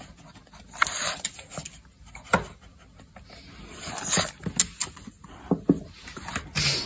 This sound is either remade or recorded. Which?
recorded